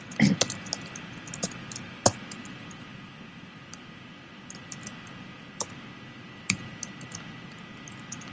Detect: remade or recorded recorded